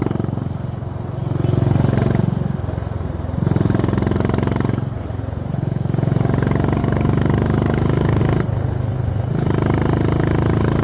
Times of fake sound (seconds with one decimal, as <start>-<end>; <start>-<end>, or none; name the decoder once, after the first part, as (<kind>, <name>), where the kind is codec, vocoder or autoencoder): 6.8-8.2 (codec, DAC)